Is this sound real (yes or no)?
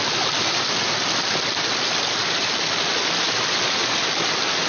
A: yes